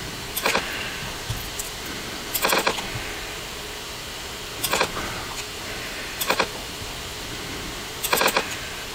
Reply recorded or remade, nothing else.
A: remade